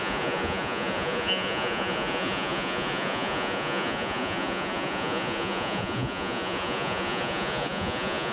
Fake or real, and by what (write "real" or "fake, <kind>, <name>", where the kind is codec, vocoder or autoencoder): fake, vocoder, Vocos